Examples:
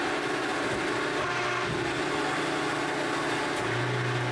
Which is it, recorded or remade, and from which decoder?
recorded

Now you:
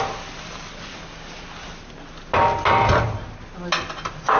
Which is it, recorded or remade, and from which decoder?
recorded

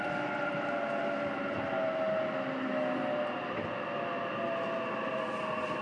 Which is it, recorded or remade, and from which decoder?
recorded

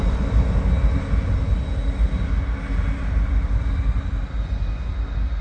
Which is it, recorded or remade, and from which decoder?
recorded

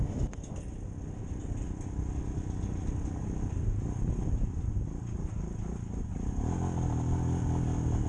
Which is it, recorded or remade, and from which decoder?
recorded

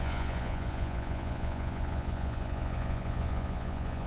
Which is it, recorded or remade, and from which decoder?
remade, vocoder, Vocos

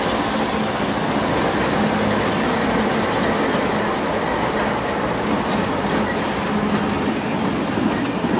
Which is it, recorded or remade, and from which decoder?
recorded